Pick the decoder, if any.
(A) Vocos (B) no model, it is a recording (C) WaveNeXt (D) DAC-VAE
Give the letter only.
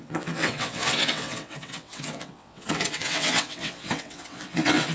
C